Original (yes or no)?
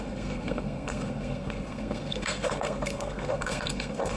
no